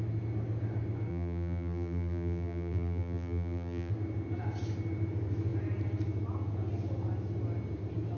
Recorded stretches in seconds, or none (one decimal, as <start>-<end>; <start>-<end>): 0.0-1.1; 3.9-8.2